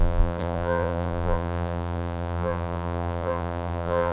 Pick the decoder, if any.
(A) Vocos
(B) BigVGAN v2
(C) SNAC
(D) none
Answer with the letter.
B